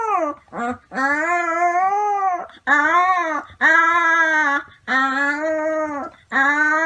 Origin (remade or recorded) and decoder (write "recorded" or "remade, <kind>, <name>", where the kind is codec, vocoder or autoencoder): recorded